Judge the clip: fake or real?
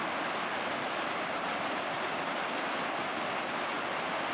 real